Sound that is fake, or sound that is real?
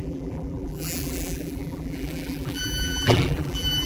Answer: fake